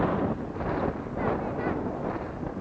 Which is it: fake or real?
real